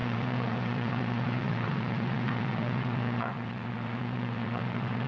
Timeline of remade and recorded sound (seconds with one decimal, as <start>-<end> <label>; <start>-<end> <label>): 0.0-5.1 remade